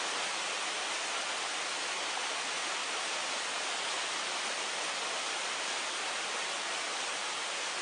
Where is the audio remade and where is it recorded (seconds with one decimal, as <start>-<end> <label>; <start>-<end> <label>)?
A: 0.0-7.8 recorded